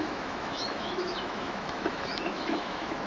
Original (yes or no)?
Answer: no